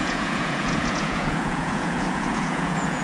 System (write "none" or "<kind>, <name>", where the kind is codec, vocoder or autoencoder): vocoder, Vocos